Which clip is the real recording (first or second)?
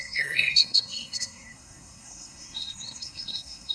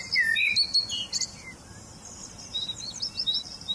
second